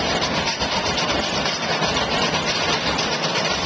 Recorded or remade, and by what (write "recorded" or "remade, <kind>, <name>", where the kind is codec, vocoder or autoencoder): remade, vocoder, BigVGAN v2